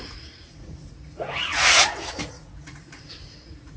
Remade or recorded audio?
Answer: remade